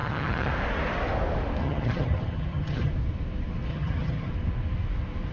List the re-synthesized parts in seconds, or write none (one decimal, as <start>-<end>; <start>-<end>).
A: 0.0-0.5; 1.6-2.9; 3.7-4.3